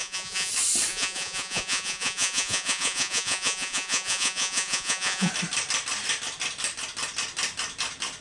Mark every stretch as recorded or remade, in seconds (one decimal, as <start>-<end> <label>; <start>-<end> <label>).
0.0-0.5 remade; 0.5-0.9 recorded; 0.9-5.3 remade; 5.3-8.2 recorded